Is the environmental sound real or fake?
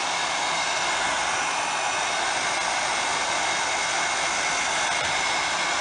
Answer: real